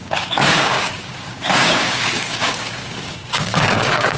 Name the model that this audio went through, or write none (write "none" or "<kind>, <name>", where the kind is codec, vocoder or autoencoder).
codec, DAC